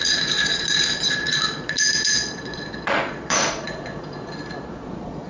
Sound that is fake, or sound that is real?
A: fake